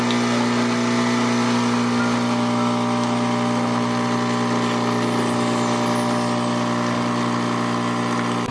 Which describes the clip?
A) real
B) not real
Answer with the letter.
A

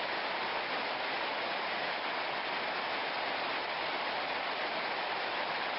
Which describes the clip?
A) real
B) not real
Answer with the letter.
A